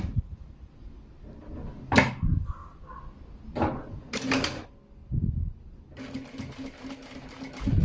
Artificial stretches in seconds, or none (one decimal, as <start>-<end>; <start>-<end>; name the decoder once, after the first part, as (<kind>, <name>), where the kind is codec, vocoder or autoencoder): none